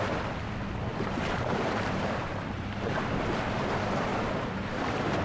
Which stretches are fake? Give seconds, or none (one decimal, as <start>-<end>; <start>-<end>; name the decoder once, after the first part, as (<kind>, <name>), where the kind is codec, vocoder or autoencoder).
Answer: 0.9-3.2 (vocoder, BigVGAN v2); 4.1-5.2